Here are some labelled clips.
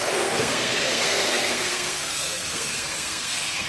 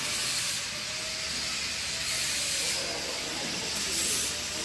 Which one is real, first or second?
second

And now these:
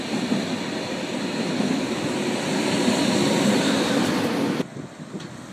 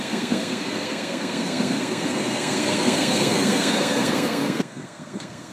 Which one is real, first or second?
first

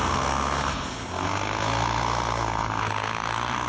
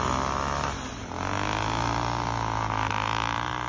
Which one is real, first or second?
second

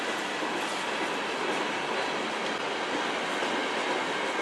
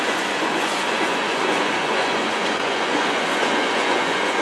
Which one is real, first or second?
first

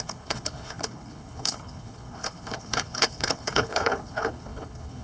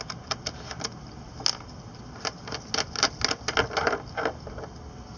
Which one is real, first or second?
second